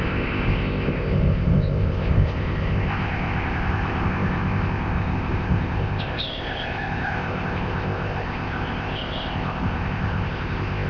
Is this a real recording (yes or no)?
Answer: no